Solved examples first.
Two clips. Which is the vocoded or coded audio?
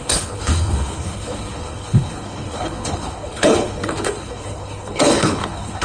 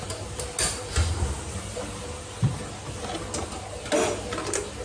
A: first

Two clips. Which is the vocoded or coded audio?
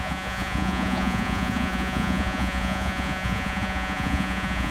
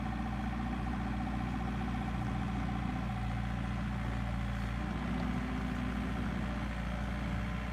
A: first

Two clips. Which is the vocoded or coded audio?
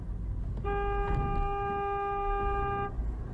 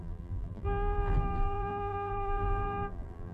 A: second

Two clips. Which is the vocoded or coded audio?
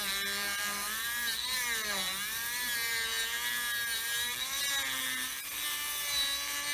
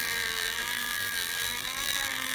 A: second